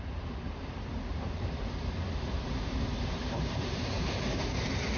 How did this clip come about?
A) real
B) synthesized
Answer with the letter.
B